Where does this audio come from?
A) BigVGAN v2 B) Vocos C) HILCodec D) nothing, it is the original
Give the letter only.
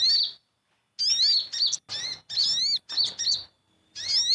D